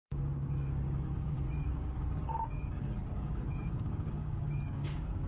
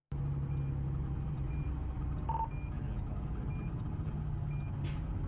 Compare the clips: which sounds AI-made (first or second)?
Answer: first